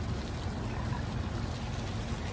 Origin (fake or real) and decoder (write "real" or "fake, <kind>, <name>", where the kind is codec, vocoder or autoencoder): real